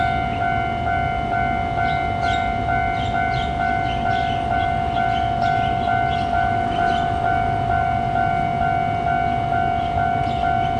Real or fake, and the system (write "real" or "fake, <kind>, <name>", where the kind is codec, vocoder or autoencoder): real